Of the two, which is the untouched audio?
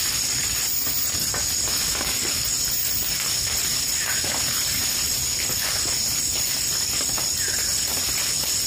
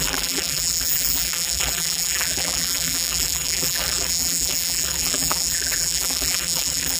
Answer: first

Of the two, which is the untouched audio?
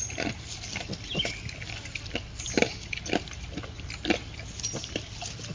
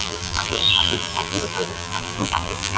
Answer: first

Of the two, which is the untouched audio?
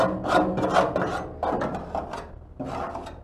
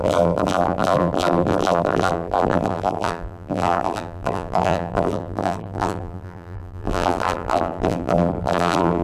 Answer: first